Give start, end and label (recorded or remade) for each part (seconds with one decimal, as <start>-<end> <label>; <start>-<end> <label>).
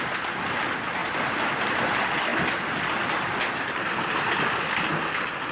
0.0-5.5 recorded